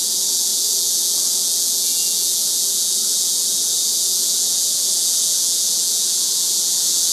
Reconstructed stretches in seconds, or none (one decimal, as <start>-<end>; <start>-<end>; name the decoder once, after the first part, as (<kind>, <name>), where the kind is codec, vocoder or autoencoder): 0.0-7.1 (vocoder, BigVGAN v2)